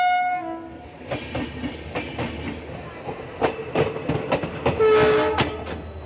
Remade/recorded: recorded